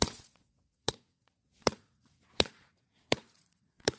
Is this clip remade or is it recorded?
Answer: remade